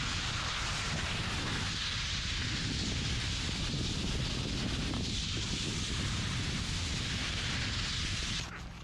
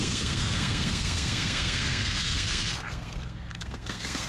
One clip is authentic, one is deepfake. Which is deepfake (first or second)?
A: second